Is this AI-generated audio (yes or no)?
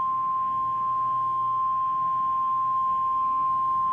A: yes